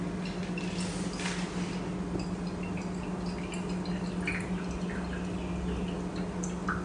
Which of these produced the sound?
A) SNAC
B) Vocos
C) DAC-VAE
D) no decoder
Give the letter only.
D